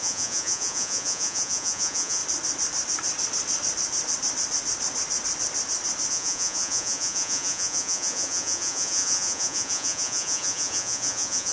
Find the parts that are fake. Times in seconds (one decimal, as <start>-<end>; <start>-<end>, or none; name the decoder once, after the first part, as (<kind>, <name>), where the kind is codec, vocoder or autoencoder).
0.0-2.2 (vocoder, Vocos); 6.1-11.5